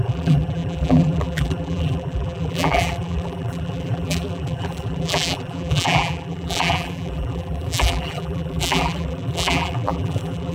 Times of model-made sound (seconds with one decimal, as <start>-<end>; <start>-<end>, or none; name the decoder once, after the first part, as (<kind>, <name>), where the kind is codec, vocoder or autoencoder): 0.0-10.5 (vocoder, BigVGAN v2)